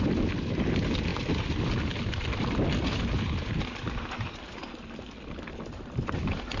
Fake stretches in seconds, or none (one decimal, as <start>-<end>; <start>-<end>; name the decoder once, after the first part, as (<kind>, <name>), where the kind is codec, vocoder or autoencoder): 0.0-1.1 (vocoder, BigVGAN v2); 1.9-6.6

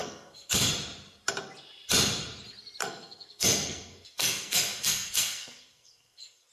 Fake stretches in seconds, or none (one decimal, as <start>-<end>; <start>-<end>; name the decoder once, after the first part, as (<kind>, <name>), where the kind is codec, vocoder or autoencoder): 0.0-0.7 (codec, SNAC); 2.8-6.5